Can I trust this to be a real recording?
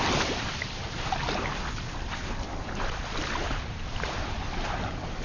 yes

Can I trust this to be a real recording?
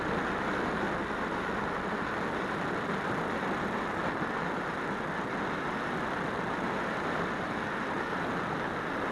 yes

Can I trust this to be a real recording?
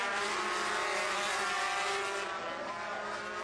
yes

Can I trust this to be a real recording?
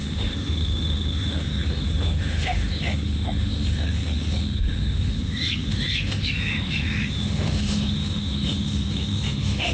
no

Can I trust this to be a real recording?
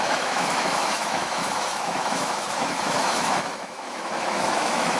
no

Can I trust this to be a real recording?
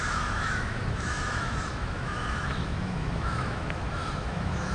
no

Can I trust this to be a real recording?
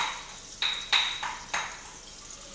yes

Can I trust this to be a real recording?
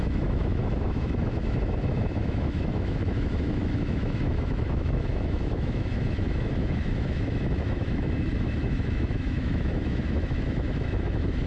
no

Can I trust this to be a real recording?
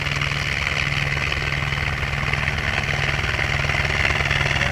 yes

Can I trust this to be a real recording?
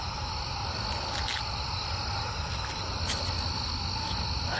yes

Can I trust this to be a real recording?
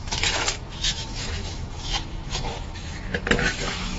no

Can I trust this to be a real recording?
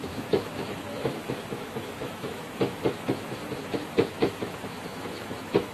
no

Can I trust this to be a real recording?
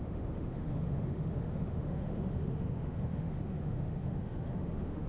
no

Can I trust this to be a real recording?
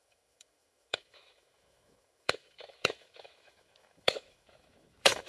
no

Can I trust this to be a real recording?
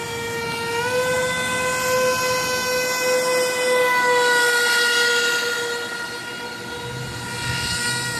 yes